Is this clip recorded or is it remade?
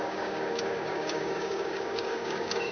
remade